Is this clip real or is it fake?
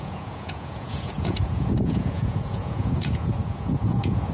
fake